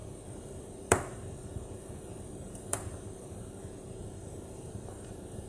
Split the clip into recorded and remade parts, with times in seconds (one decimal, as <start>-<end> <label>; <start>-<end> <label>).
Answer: 0.0-3.3 remade; 3.3-4.0 recorded; 4.0-5.1 remade; 5.1-5.5 recorded